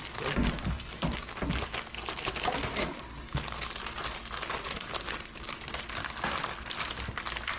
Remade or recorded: recorded